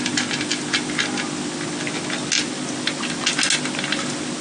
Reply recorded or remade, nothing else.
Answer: recorded